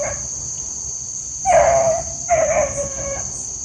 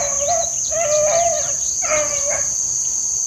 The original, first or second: second